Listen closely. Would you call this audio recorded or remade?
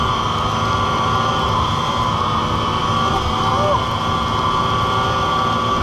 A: recorded